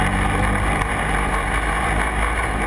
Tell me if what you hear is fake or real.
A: fake